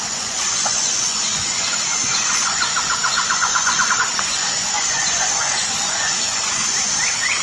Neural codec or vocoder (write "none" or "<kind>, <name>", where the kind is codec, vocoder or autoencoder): vocoder, Vocos